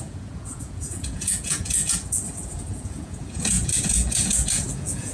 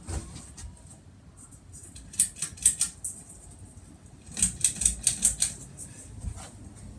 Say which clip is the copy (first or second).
first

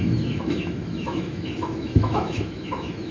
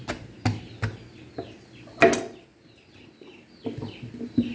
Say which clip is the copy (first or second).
first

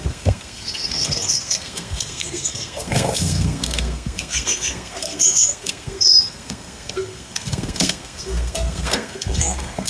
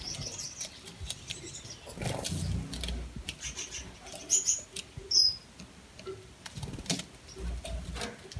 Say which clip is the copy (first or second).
first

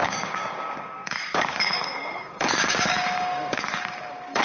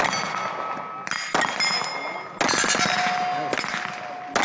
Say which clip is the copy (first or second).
first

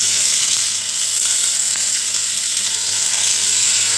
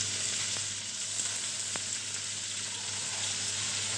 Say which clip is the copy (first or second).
first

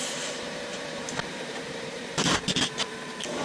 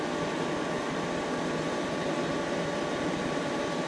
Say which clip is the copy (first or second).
first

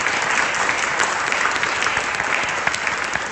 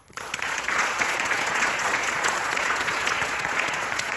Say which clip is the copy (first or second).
second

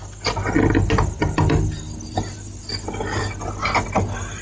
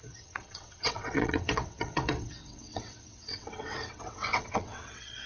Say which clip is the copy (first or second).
second